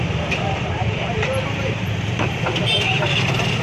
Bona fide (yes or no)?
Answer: no